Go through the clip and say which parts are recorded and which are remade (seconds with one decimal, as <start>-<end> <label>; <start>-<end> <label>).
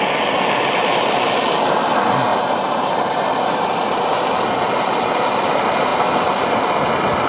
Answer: 0.0-2.3 recorded; 2.3-4.1 remade; 4.1-7.3 recorded